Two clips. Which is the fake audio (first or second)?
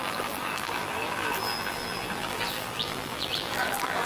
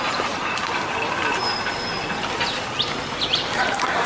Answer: first